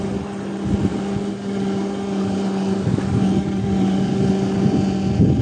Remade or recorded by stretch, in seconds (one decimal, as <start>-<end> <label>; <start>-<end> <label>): 0.0-0.9 recorded; 0.9-4.1 remade; 4.1-5.4 recorded

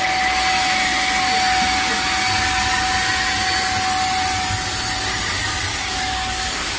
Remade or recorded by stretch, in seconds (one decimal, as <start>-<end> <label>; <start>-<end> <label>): 0.0-5.7 recorded; 5.7-6.8 remade

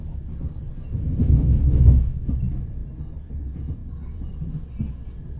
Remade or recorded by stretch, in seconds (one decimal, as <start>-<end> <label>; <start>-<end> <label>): 0.0-1.2 recorded; 1.2-2.3 remade; 2.3-5.4 recorded

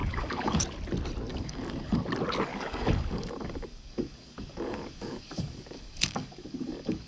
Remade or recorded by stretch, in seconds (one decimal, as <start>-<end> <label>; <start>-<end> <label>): 0.0-0.6 remade; 0.6-1.3 recorded; 1.3-2.1 remade; 2.1-2.5 recorded; 2.5-7.1 remade